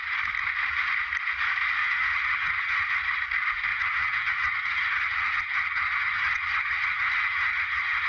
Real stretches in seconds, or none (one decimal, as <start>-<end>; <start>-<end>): 0.0-1.8; 3.0-3.7